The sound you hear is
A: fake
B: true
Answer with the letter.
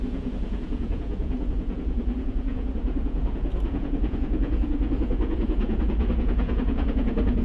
A